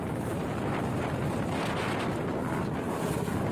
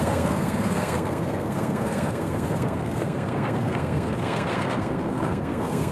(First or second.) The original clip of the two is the first